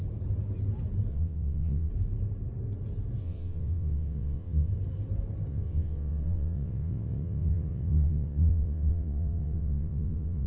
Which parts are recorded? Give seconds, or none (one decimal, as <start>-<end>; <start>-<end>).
0.0-1.1; 1.9-3.2; 4.7-5.5